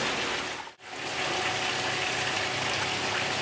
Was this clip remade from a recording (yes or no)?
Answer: no